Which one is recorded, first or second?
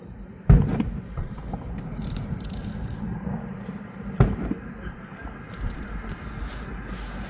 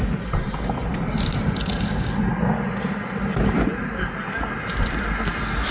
second